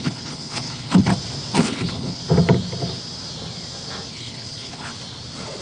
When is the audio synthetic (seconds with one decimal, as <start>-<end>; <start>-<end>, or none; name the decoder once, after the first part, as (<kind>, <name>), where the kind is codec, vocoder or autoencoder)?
0.0-1.1 (codec, HILCodec); 1.6-2.2; 4.1-4.9